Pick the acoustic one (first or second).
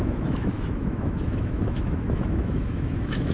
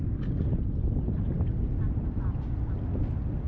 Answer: second